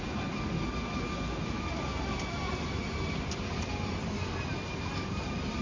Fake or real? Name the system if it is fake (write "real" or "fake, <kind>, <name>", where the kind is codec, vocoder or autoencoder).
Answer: real